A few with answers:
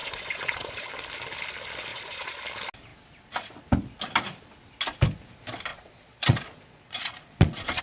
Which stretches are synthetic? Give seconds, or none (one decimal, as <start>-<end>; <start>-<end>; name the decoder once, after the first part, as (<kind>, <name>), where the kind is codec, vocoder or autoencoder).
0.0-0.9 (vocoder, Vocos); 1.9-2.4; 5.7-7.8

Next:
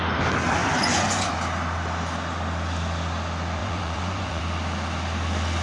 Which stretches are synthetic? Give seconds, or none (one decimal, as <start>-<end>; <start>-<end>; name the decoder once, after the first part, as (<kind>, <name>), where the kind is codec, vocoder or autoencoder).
0.6-1.3 (vocoder, Vocos); 3.6-4.4

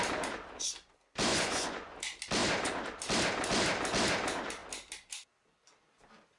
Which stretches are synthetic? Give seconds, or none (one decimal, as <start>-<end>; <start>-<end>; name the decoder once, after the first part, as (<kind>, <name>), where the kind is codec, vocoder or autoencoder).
1.3-2.0 (vocoder, Vocos)

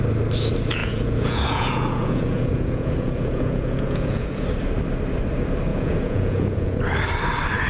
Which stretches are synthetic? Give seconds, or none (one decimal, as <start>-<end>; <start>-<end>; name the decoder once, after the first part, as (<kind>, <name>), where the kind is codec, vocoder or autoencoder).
0.8-4.4 (vocoder, Vocos); 5.7-6.8